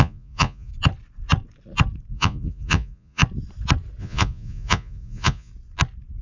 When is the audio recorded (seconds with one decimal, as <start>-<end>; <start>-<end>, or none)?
0.7-2.1; 3.2-4.0; 5.5-6.2